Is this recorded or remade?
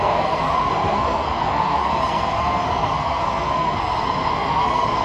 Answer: remade